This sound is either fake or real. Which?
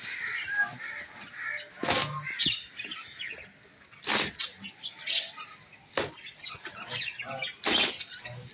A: real